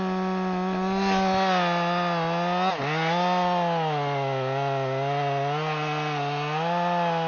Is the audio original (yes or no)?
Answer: yes